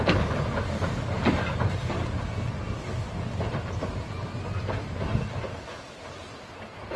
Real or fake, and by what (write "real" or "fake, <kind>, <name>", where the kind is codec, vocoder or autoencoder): real